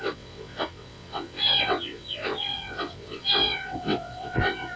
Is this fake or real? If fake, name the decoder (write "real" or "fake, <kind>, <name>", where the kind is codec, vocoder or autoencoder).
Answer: fake, vocoder, WaveNeXt